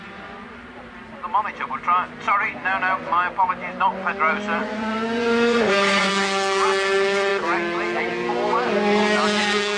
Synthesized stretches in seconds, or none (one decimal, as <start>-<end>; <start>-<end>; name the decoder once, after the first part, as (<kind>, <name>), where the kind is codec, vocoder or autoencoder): 4.6-6.1 (vocoder, Vocos)